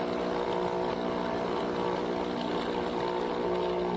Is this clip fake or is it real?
real